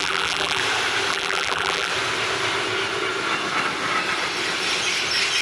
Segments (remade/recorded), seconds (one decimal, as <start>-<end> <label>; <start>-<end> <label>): 0.0-0.6 remade; 0.6-1.1 recorded; 1.1-1.9 remade; 1.9-5.4 recorded

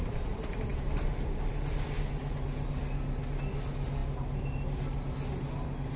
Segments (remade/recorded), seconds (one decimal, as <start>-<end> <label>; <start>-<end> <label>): 0.0-6.0 recorded

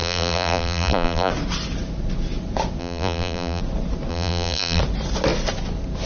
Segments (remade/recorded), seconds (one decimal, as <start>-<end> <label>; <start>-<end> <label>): 0.0-1.3 remade; 1.3-2.8 recorded; 2.8-3.6 remade; 3.6-4.1 recorded; 4.1-4.8 remade; 4.8-6.1 recorded

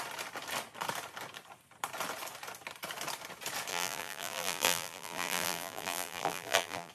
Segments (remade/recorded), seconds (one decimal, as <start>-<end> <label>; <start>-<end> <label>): 0.0-3.7 recorded; 3.7-6.9 remade